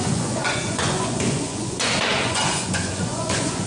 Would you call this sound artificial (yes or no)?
yes